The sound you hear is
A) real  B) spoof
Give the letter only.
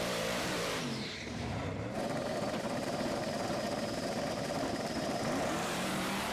B